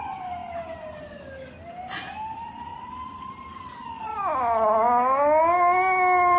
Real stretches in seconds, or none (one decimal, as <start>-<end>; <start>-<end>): 0.0-2.7; 3.6-6.4